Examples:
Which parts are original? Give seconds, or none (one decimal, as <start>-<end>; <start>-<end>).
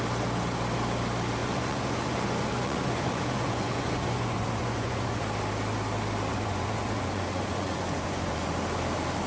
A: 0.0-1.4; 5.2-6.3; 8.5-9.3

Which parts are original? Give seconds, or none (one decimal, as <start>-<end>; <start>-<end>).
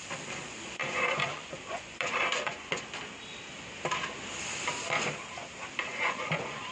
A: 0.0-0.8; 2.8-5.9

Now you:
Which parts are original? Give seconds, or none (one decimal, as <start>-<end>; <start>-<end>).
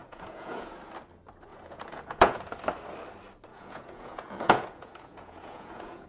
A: 0.8-1.5; 2.5-3.5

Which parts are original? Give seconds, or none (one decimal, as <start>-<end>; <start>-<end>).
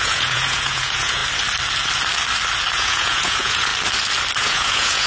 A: 1.2-2.7; 3.7-4.4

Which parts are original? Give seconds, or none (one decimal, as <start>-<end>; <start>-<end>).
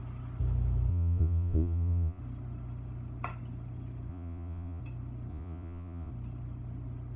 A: 0.0-0.9; 2.2-4.1; 4.8-5.3; 6.1-7.2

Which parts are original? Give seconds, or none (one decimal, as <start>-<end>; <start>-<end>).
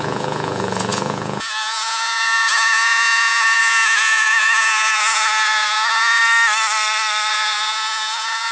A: 6.2-7.3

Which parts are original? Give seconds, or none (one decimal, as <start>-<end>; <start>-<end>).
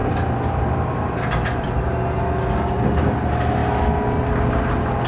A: 0.0-5.1